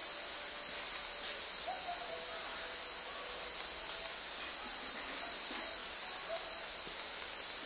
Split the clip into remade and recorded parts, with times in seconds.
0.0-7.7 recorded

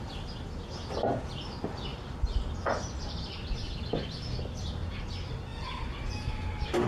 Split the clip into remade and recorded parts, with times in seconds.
0.0-6.9 recorded

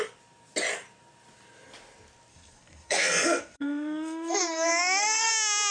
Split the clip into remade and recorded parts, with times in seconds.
0.0-2.3 recorded; 2.3-5.3 remade; 5.3-5.7 recorded

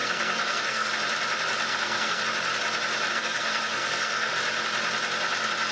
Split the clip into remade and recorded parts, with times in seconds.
0.0-0.9 remade; 0.9-1.7 recorded; 1.7-2.2 remade; 2.2-3.1 recorded; 3.1-4.3 remade; 4.3-5.7 recorded